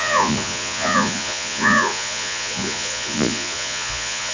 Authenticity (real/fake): fake